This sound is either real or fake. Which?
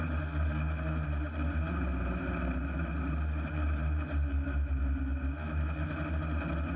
real